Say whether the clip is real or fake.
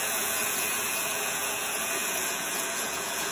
fake